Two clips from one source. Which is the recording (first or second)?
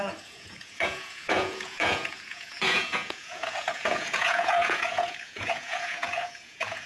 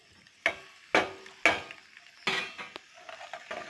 second